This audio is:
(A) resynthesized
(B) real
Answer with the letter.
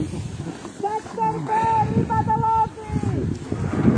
B